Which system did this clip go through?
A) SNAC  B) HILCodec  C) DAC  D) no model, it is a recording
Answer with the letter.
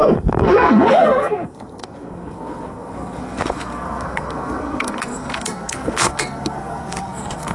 A